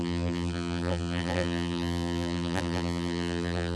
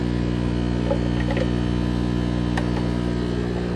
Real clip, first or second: second